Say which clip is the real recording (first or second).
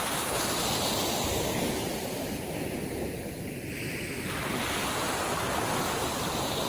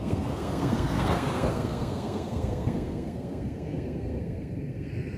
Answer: first